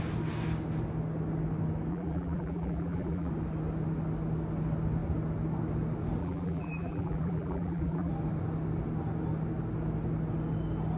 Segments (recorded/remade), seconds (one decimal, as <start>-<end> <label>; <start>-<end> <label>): 0.0-1.9 recorded; 1.9-3.3 remade; 3.3-6.2 recorded; 6.2-8.1 remade; 8.1-11.0 recorded